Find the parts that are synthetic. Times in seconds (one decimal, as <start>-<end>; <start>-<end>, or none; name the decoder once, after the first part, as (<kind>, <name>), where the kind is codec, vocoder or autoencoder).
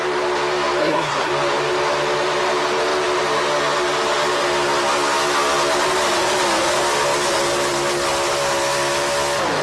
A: 0.8-1.3 (codec, SNAC)